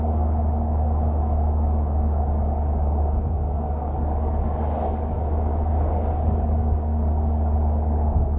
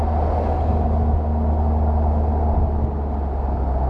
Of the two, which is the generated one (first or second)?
first